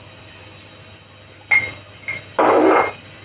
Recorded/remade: recorded